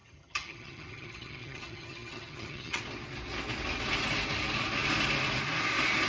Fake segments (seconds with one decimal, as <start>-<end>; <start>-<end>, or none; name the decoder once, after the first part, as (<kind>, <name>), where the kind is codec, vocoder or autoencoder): 0.0-2.8 (vocoder, HiFi-GAN)

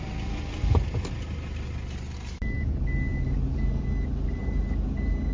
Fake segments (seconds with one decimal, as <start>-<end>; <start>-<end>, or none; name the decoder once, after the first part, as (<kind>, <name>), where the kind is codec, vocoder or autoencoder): none

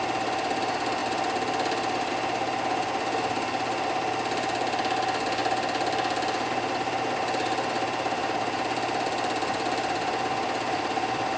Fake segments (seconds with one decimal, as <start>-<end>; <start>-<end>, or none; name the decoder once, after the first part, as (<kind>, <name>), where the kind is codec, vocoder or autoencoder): none